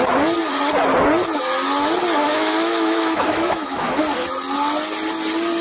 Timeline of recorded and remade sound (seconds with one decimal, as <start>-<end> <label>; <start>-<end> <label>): 0.0-2.2 recorded; 2.2-4.0 remade; 4.0-5.6 recorded